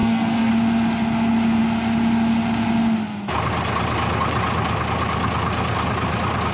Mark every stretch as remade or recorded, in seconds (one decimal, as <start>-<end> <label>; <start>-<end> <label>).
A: 0.0-0.5 remade; 0.5-6.5 recorded